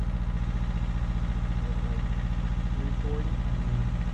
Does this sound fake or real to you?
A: real